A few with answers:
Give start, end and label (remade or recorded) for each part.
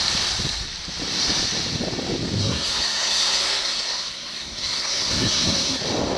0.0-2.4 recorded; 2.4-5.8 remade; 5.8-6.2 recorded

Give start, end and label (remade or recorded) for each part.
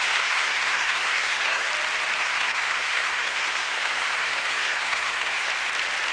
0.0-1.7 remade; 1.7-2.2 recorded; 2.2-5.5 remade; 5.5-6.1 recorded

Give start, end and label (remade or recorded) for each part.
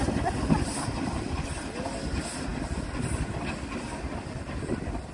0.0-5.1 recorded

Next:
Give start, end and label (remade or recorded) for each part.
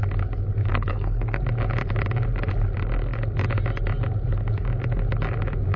0.0-0.7 recorded; 0.7-1.4 remade; 1.4-5.8 recorded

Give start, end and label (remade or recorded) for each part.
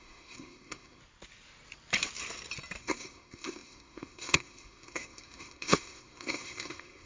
0.0-1.0 remade; 1.0-2.8 recorded; 2.8-7.1 remade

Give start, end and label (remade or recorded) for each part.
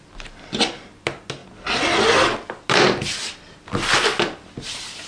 0.0-5.1 recorded